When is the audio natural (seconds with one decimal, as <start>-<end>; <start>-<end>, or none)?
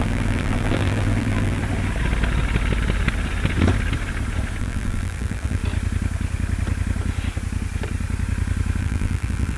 1.6-4.6; 5.6-8.8